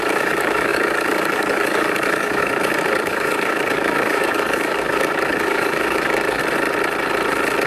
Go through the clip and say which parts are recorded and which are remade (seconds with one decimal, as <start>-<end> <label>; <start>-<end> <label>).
0.0-6.4 remade; 6.4-7.7 recorded